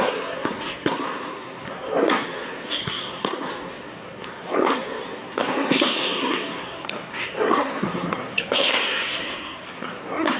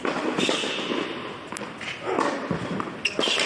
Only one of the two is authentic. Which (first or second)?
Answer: second